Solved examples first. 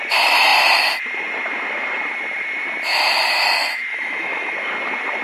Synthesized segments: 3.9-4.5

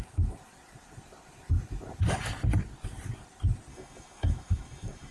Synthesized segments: 3.7-5.1

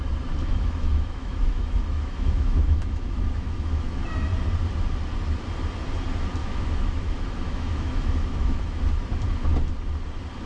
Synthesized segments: 0.4-4.0; 6.4-8.8

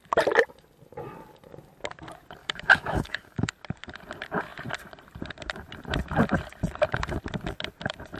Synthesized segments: 2.4-3.5

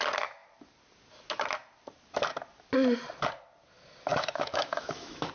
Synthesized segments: 4.1-5.3

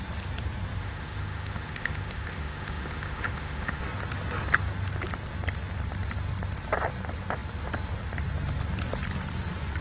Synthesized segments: 0.8-3.8

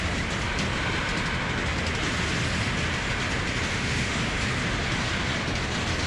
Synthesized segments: 3.7-4.2

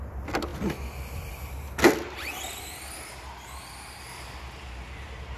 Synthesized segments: none